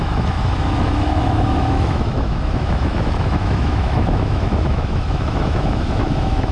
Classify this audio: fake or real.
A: fake